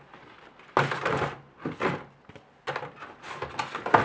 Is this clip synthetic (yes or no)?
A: no